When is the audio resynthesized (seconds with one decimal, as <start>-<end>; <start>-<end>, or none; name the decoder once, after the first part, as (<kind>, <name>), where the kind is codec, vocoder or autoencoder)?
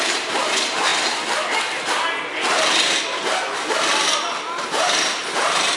0.0-0.9 (vocoder, BigVGAN v2); 4.4-5.8